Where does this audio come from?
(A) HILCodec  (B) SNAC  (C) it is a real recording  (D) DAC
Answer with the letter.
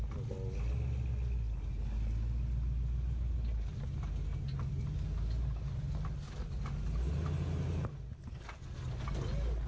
C